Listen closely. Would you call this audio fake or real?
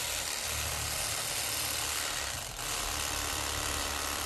fake